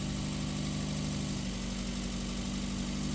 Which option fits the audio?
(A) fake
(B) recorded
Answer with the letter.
B